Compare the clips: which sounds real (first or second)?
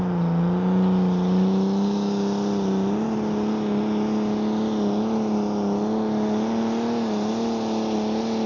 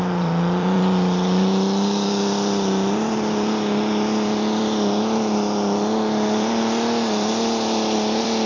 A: first